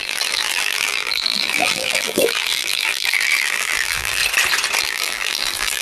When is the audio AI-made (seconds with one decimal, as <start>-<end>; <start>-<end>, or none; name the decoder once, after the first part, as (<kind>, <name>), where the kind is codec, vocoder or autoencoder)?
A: 0.0-4.2 (vocoder, BigVGAN v2); 4.8-5.8